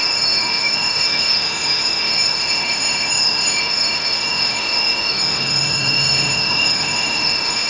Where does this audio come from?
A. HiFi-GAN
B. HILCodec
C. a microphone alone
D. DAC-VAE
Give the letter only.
D